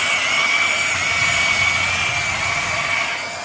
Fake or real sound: real